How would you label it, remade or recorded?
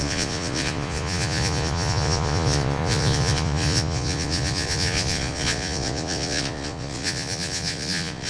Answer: remade